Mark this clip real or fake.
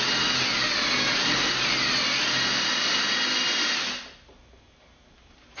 real